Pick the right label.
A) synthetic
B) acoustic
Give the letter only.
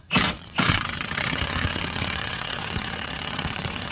A